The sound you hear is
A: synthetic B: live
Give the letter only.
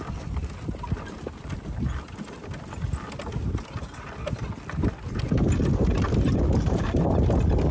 B